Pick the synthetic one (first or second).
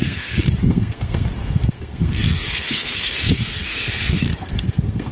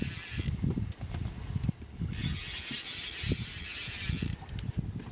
first